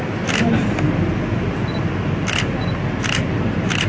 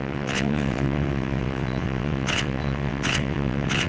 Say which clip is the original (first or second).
first